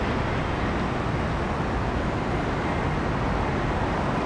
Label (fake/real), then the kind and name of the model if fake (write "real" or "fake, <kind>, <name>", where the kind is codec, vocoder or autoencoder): real